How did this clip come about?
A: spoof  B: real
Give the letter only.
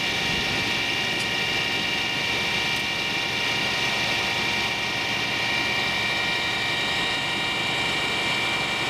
B